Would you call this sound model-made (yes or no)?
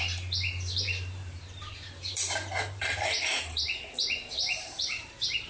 yes